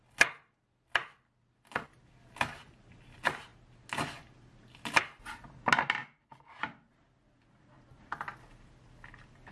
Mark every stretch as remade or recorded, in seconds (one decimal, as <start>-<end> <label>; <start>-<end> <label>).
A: 0.0-9.5 recorded

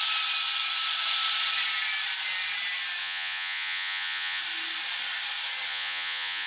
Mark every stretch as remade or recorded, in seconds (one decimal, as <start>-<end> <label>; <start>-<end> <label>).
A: 0.0-3.0 recorded; 3.0-4.4 remade; 4.4-5.7 recorded; 5.7-6.5 remade

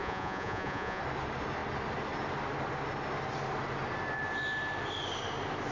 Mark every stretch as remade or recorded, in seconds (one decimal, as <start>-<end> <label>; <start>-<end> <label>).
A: 0.0-1.0 remade; 1.0-5.7 recorded

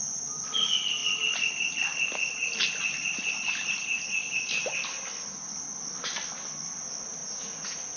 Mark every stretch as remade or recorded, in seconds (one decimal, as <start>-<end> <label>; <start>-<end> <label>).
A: 0.0-7.2 recorded; 7.2-8.0 remade

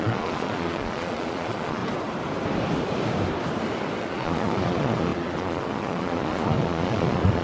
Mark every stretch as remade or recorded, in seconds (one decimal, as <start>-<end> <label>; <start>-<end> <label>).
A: 0.0-1.8 remade; 1.8-4.0 recorded; 4.0-7.4 remade